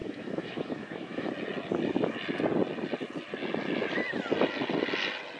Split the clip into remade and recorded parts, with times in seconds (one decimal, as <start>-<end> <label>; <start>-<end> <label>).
0.0-1.3 remade; 1.3-5.4 recorded